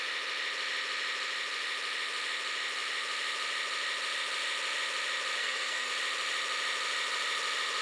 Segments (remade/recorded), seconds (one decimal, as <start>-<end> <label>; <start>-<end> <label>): 0.0-5.4 recorded; 5.4-5.9 remade; 5.9-7.8 recorded